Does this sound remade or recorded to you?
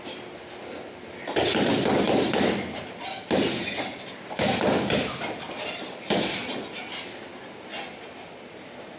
recorded